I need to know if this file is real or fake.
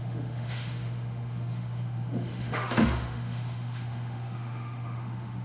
fake